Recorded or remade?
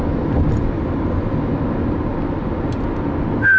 recorded